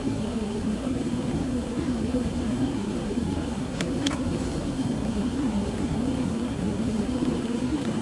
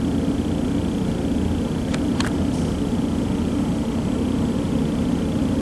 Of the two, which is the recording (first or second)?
second